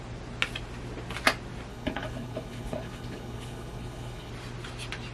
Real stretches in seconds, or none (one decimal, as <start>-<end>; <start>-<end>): 0.0-1.7; 4.3-5.1